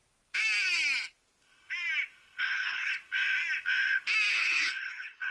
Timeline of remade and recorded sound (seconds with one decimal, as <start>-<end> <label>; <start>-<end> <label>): 0.0-2.4 recorded; 2.4-2.9 remade; 2.9-4.3 recorded; 4.3-5.3 remade